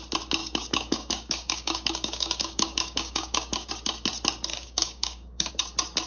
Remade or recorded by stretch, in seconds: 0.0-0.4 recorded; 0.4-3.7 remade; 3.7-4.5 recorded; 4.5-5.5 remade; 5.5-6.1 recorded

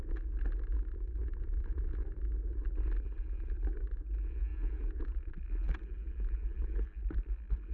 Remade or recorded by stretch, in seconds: 0.0-1.2 recorded; 1.2-2.0 remade; 2.0-4.5 recorded; 4.5-5.3 remade; 5.3-7.7 recorded

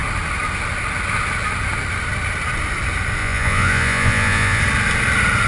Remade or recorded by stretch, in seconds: 0.0-3.2 recorded; 3.2-4.6 remade; 4.6-5.5 recorded